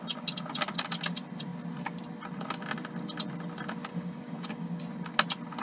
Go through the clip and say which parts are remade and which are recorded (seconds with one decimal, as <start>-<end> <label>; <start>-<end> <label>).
0.0-3.9 recorded; 3.9-4.8 remade; 4.8-5.6 recorded